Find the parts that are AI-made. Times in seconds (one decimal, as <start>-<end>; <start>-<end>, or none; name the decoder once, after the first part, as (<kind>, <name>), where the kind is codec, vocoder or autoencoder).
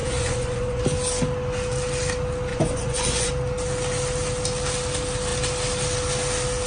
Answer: 0.0-0.8 (vocoder, Vocos); 2.5-3.3